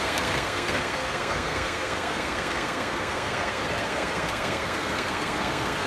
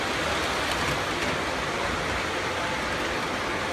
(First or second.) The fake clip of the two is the first